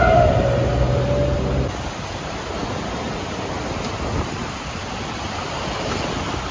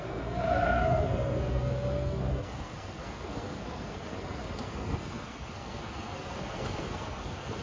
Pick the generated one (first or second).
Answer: second